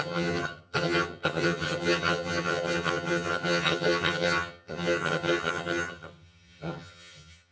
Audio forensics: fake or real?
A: fake